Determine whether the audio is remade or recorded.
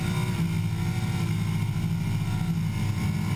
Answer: recorded